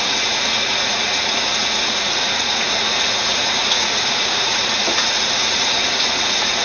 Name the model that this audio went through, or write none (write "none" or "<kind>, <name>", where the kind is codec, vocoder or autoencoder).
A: vocoder, Vocos